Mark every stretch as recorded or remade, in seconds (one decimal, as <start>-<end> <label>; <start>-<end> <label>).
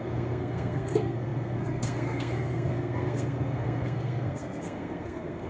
0.0-5.5 remade